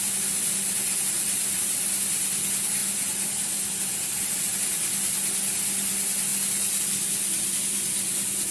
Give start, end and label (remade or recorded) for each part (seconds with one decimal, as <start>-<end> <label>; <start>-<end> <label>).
0.0-8.5 recorded